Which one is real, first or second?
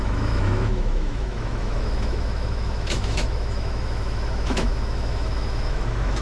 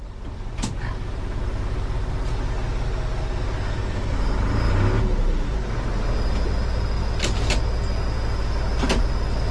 second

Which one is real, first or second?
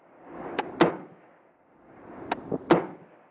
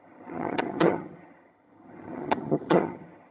first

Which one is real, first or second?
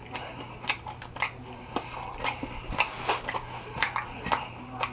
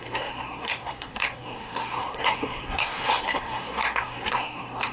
first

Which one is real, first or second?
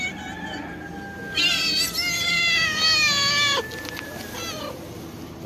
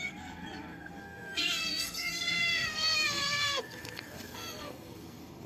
first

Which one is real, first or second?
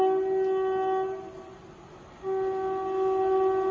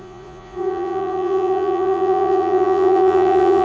first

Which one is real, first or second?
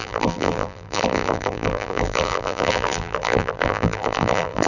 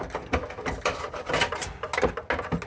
second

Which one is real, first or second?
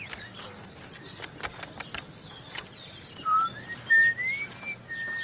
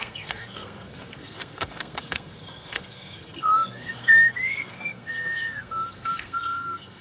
first